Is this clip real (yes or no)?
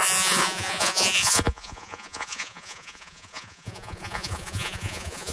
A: no